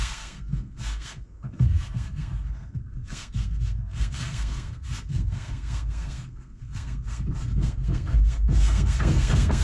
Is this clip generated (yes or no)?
yes